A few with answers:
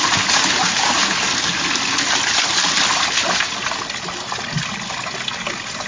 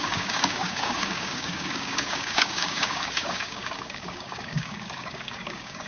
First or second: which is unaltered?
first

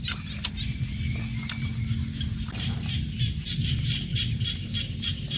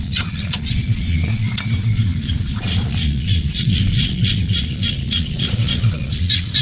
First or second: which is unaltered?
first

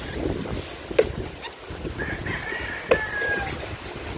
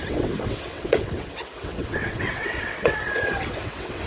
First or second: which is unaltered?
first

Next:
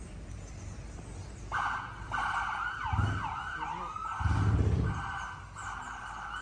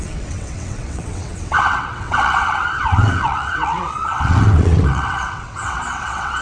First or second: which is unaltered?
first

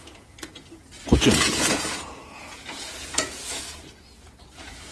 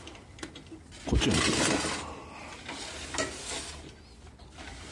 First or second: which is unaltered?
second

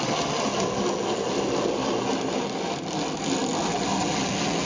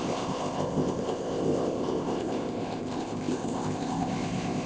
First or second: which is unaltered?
first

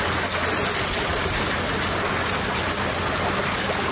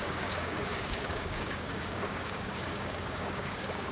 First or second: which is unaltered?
first